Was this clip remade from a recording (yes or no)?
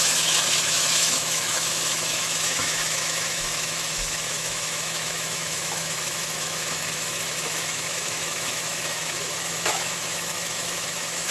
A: yes